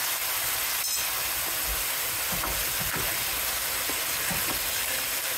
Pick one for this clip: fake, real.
real